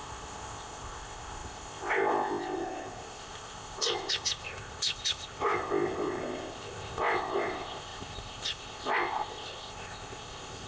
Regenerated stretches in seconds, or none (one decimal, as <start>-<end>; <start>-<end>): 0.0-10.7